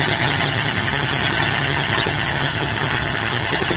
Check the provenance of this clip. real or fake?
fake